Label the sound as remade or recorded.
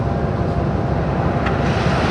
recorded